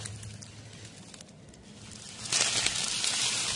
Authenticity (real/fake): real